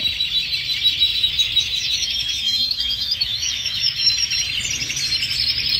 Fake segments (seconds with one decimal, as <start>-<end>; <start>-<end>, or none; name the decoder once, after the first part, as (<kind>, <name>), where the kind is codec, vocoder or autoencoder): 1.1-4.1 (autoencoder, DAC-VAE)